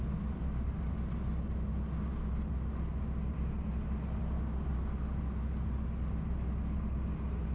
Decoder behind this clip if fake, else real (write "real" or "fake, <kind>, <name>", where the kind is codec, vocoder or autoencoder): real